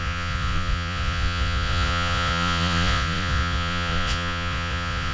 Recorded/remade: remade